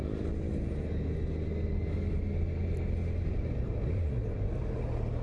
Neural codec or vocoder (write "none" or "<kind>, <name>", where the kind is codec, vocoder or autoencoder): none